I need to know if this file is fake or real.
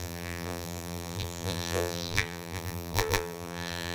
fake